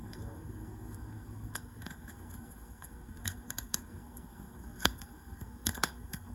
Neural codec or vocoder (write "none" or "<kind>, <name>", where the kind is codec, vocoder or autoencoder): codec, SNAC